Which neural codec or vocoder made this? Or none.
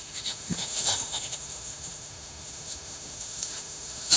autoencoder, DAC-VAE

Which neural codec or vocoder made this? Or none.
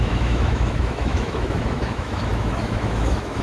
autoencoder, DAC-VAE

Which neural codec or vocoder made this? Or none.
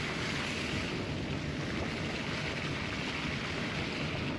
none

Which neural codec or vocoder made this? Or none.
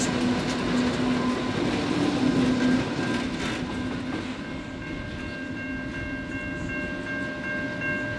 none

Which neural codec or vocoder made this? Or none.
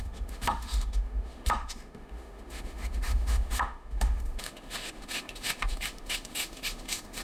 autoencoder, DAC-VAE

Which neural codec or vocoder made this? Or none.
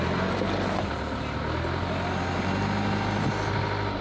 none